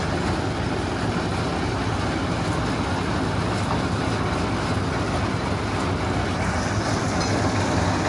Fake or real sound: real